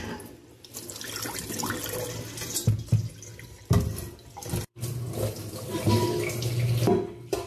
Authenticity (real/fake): real